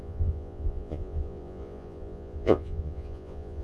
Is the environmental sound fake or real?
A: fake